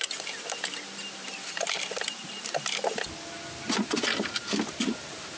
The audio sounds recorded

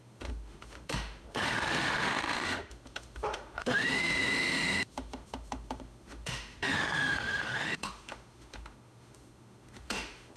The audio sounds remade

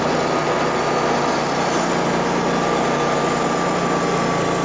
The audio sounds recorded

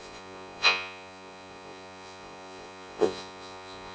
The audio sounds remade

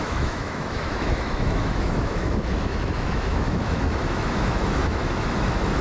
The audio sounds remade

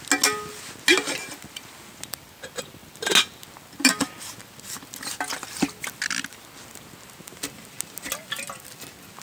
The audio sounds recorded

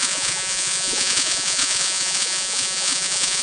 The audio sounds remade